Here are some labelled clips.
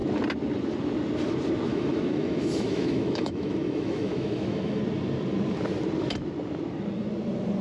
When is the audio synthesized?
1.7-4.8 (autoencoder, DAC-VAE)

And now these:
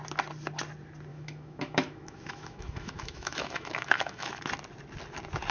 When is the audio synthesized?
1.1-4.4 (autoencoder, DAC-VAE)

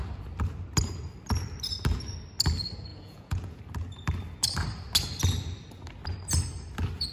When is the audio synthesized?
2.9-3.6 (vocoder, Vocos)

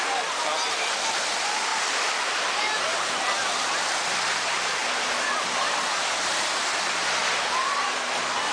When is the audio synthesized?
none

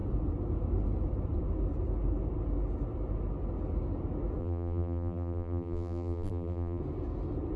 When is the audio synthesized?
4.4-6.8 (vocoder, BigVGAN v2)

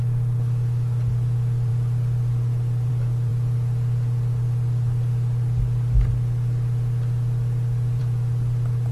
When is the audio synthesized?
none

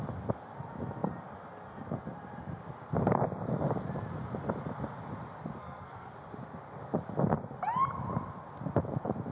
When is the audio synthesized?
5.6-6.1 (codec, SNAC)

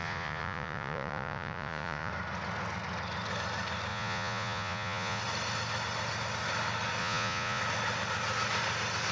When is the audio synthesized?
0.0-2.1 (vocoder, Vocos); 3.9-5.2; 7.0-7.6